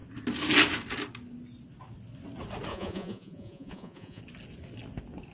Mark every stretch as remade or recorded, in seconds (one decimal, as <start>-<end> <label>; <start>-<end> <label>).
0.0-2.7 recorded; 2.7-4.2 remade; 4.2-5.3 recorded